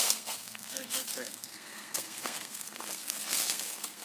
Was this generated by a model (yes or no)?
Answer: yes